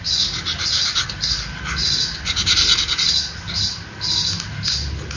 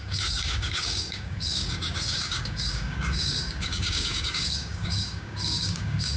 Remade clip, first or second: second